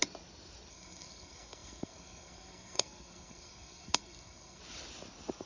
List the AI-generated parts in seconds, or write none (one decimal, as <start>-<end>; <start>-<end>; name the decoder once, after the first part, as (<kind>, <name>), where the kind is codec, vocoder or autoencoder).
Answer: 0.7-4.6 (codec, SNAC)